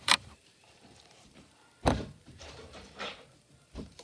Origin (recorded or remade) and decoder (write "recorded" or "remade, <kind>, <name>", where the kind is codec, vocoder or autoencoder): remade, vocoder, BigVGAN v2